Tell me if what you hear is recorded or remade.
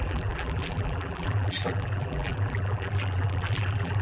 remade